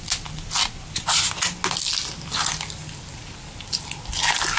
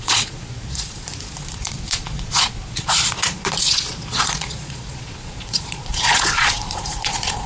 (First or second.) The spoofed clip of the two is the second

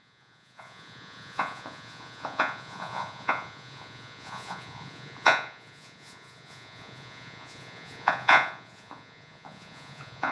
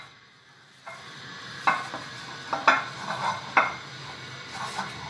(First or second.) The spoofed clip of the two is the first